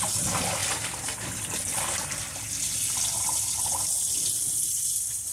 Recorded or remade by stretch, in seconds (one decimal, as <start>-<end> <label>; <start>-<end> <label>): 0.0-5.3 recorded